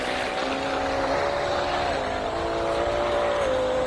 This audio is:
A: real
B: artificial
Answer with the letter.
A